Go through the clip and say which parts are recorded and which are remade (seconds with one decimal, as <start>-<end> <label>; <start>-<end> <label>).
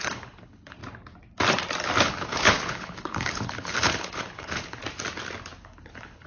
0.0-0.8 remade; 0.8-2.0 recorded; 2.0-4.8 remade; 4.8-5.6 recorded; 5.6-6.3 remade